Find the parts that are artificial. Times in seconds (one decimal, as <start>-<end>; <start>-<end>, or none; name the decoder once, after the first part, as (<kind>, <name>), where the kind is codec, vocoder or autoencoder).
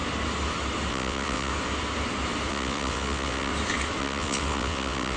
0.9-1.5 (vocoder, WaveNeXt); 2.5-3.5; 4.0-5.2